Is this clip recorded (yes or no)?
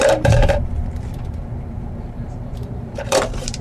no